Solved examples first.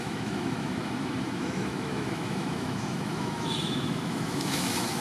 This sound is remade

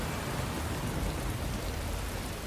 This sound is recorded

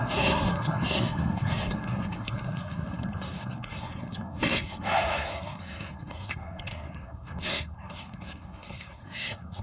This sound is remade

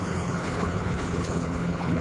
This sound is remade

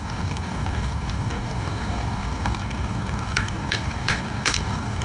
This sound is remade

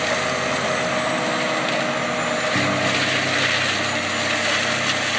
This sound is recorded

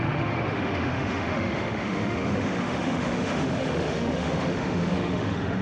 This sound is remade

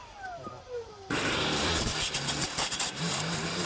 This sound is remade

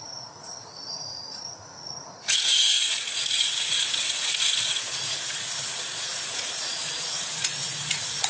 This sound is remade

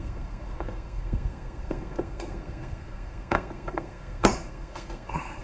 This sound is remade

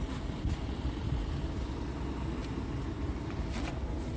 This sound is recorded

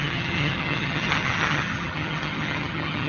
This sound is remade